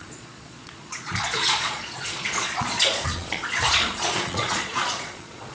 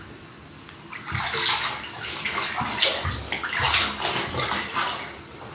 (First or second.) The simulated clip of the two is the first